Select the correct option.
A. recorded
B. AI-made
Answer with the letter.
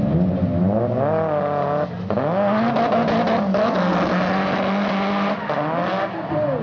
A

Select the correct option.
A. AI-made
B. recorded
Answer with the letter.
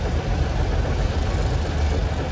B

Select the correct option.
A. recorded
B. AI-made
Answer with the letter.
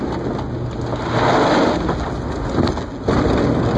A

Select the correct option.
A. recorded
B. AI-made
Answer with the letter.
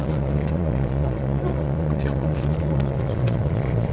B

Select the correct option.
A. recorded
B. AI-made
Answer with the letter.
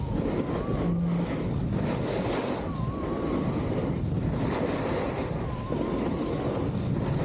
A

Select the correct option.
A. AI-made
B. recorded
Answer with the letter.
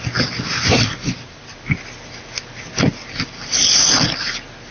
B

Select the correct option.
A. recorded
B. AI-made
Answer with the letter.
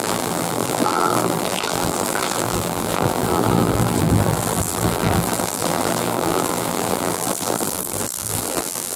B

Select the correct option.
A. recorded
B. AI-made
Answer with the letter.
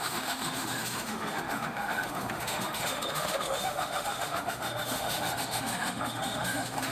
B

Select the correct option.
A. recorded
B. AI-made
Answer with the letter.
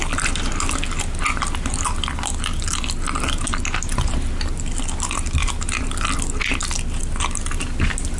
A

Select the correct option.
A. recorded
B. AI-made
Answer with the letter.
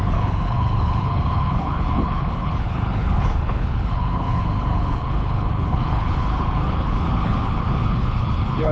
B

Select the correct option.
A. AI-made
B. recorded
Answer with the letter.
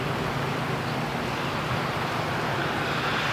B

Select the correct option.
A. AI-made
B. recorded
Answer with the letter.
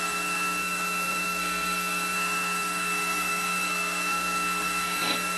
A